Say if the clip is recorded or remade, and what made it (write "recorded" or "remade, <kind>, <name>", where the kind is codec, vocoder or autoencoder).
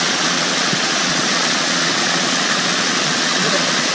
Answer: remade, vocoder, Vocos